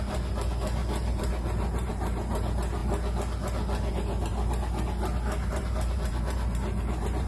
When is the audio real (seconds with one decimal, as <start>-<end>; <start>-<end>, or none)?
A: 2.8-3.9; 4.3-5.5